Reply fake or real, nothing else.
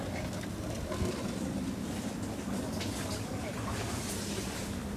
real